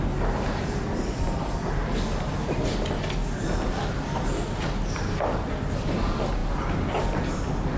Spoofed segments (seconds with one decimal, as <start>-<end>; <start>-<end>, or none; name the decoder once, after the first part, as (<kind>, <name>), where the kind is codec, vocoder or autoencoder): none